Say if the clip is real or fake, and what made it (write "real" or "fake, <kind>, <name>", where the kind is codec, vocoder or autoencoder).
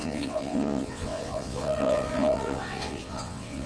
fake, vocoder, WaveNeXt